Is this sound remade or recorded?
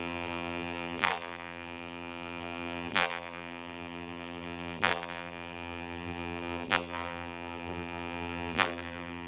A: remade